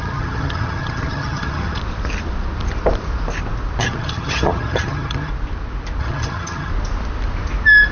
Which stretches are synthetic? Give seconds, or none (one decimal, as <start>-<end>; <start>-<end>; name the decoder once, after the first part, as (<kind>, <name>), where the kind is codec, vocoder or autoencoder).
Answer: 0.0-1.8 (vocoder, HiFi-GAN); 3.8-5.3; 6.0-6.7